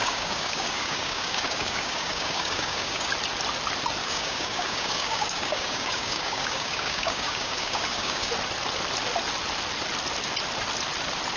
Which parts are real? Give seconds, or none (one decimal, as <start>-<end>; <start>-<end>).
3.1-4.0; 8.3-11.4